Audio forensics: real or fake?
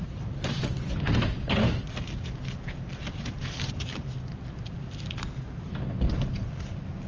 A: real